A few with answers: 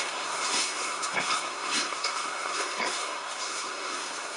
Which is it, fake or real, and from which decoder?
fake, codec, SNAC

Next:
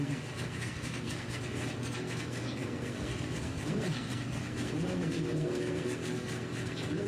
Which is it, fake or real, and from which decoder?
fake, codec, SNAC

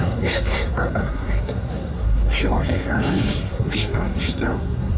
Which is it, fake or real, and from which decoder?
fake, codec, SNAC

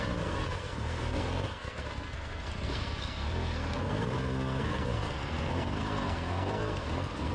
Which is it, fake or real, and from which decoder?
fake, codec, SNAC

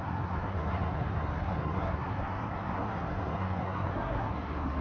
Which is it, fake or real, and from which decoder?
fake, codec, SNAC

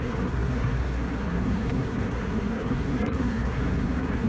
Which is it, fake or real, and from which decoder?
fake, codec, SNAC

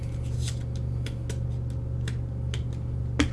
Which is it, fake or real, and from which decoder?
real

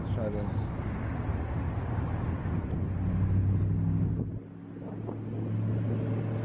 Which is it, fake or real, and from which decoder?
real